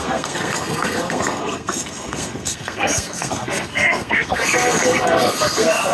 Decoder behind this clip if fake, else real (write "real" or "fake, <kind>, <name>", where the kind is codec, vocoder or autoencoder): fake, codec, SNAC